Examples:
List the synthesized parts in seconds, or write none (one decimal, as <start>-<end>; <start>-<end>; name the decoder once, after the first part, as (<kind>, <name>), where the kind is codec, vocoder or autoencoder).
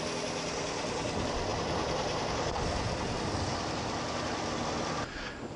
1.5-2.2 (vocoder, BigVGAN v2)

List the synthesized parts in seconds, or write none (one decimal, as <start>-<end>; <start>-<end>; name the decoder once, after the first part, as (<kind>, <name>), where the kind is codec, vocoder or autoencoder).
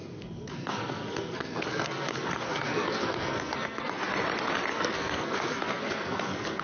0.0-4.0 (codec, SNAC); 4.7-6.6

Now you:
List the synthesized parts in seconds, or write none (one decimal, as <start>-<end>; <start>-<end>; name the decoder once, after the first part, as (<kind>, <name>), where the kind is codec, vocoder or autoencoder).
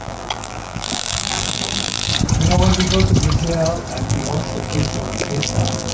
0.0-2.1 (vocoder, BigVGAN v2); 4.0-5.9